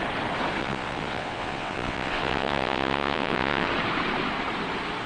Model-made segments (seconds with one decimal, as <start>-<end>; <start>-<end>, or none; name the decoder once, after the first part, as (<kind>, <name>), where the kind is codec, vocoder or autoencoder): 0.6-3.7 (vocoder, WaveNeXt)